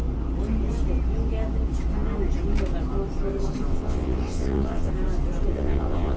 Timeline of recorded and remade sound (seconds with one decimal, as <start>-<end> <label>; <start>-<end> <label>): 0.0-3.7 recorded; 3.7-4.9 remade; 4.9-5.5 recorded; 5.5-6.2 remade